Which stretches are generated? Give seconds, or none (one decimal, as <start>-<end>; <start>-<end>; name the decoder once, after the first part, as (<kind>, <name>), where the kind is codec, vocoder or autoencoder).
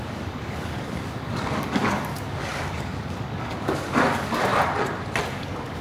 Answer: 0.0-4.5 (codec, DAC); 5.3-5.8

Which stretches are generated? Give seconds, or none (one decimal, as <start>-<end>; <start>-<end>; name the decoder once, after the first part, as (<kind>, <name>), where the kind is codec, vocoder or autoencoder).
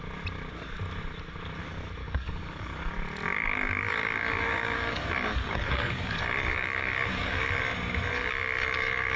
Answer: 2.0-2.9 (codec, DAC); 3.3-7.6; 8.1-9.2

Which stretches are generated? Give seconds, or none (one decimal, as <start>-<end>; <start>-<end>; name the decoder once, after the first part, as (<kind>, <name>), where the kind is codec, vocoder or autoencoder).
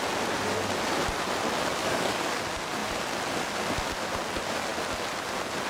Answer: 1.8-2.4 (codec, DAC)